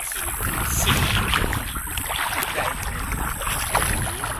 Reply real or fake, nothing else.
real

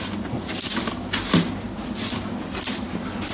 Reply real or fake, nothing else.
real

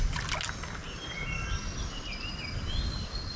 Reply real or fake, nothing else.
real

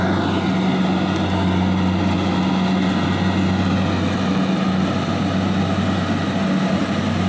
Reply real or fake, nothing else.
real